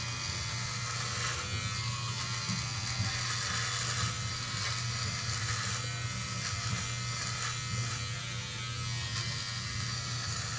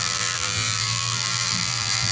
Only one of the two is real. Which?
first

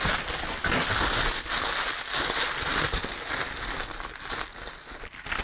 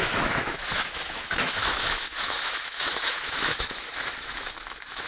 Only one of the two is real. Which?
first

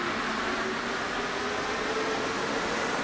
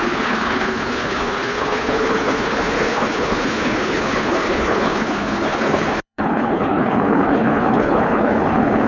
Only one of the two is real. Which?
first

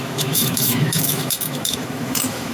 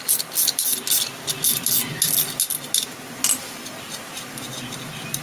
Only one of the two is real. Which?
second